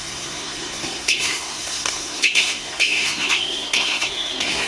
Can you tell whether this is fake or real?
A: fake